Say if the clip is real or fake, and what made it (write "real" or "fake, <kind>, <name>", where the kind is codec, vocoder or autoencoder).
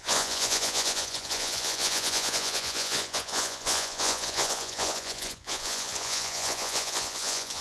fake, vocoder, Vocos